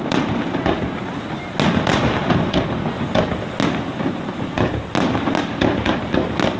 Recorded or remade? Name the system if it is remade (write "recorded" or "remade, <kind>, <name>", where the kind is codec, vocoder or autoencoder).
recorded